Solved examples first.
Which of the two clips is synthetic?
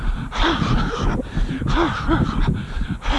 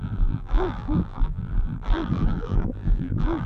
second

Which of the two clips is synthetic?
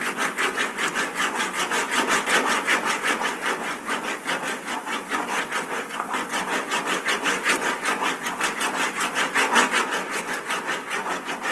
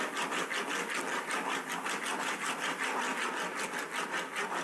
first